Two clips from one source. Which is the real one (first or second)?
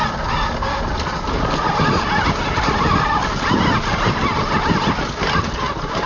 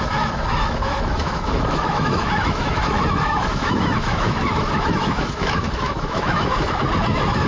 first